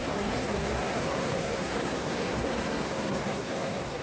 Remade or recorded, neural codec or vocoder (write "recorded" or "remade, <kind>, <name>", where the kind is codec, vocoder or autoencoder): remade, codec, SNAC